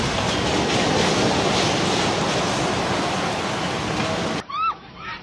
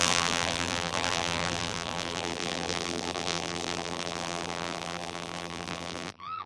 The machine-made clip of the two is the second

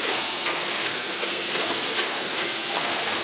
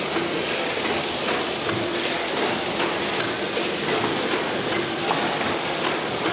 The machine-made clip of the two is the first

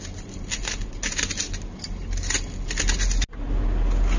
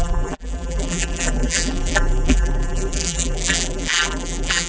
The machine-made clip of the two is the second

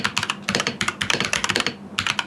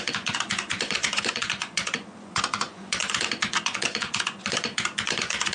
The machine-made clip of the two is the second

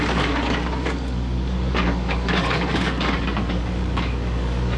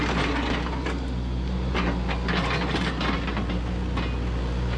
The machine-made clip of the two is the first